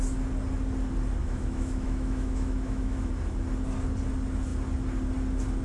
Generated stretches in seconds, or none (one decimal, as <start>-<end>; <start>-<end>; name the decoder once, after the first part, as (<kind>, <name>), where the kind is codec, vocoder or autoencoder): 1.2-3.1 (autoencoder, DAC-VAE)

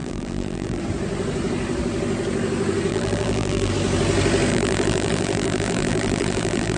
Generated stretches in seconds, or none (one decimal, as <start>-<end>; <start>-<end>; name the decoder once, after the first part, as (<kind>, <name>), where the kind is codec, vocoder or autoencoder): 0.0-0.8 (vocoder, BigVGAN v2); 2.9-3.7; 4.5-6.8